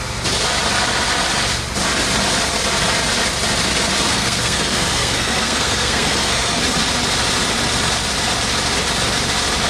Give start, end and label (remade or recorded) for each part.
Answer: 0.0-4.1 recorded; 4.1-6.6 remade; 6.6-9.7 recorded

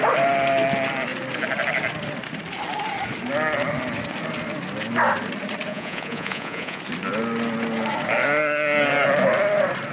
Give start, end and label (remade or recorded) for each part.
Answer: 0.0-5.7 recorded; 5.7-6.8 remade; 6.8-9.9 recorded

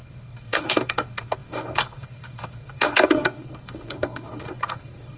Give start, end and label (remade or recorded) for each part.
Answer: 0.0-5.2 remade

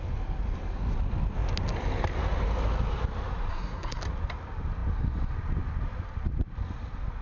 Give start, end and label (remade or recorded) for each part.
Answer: 0.0-3.5 recorded; 3.5-4.0 remade; 4.0-7.2 recorded

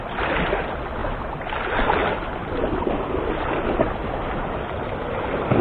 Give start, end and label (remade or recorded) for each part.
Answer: 0.0-5.6 recorded